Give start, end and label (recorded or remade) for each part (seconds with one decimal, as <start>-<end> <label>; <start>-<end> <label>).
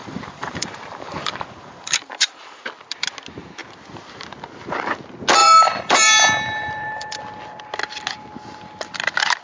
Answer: 0.0-2.7 remade; 2.7-5.4 recorded; 5.4-7.2 remade; 7.2-9.4 recorded